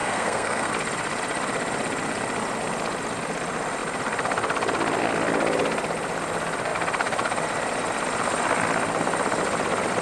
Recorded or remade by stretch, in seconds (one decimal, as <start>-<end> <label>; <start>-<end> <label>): 0.0-0.7 remade; 0.7-10.0 recorded